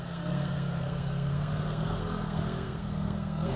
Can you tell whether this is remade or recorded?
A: remade